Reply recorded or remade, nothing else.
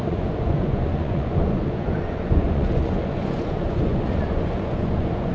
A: remade